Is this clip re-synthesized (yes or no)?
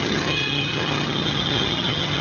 yes